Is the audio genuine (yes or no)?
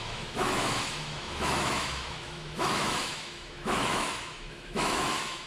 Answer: no